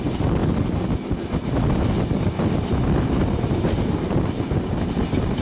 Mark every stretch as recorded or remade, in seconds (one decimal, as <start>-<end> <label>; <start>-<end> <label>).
0.0-5.4 recorded